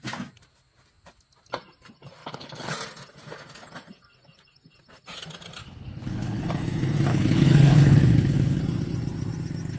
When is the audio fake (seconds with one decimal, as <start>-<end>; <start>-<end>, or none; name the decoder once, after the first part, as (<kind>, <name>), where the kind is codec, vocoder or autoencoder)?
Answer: 2.2-2.7 (codec, HILCodec); 5.6-6.4; 7.1-8.6